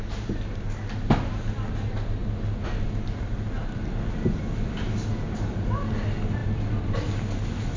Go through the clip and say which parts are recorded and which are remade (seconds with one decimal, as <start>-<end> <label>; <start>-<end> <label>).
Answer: 0.0-7.8 recorded